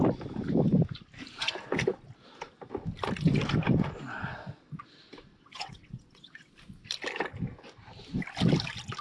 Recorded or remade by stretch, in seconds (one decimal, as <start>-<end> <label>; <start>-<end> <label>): 0.0-5.3 recorded; 5.3-6.5 remade; 6.5-9.0 recorded